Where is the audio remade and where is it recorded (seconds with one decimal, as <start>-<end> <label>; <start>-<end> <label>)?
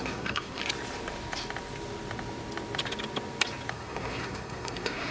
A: 0.0-0.6 remade; 0.6-3.7 recorded; 3.7-5.1 remade